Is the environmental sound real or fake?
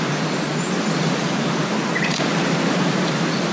real